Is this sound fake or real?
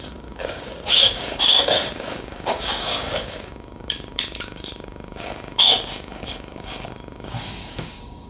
fake